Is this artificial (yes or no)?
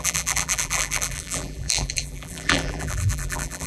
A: yes